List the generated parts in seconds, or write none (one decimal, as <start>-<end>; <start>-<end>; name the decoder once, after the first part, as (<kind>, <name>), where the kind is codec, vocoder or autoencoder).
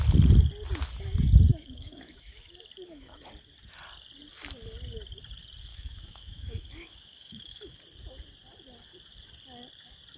1.5-3.3 (autoencoder, DAC-VAE); 5.7-7.8